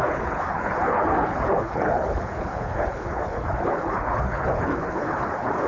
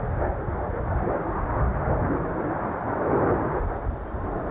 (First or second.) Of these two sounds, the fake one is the first